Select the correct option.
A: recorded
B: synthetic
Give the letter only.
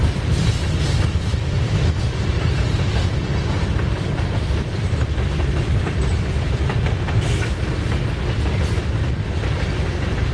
A